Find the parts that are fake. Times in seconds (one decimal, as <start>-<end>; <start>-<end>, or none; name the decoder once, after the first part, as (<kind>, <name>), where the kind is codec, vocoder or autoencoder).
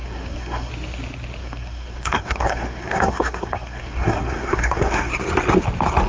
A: 0.0-0.7 (codec, SNAC); 1.4-5.1